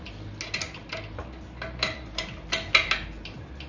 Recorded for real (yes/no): yes